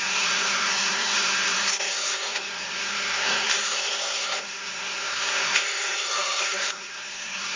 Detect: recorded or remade remade